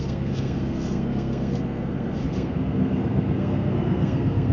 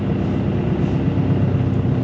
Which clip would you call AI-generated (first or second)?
first